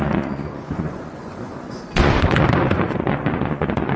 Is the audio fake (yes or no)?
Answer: yes